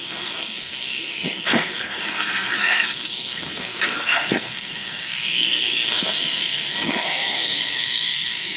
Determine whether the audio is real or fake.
fake